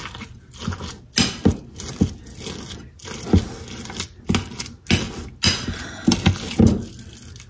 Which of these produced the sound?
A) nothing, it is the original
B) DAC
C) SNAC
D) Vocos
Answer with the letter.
A